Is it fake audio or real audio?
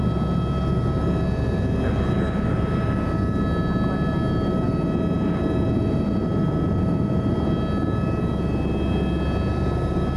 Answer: real